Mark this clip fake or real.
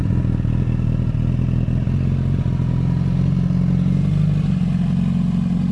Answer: real